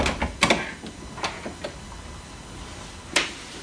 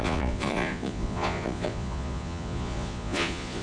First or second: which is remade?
second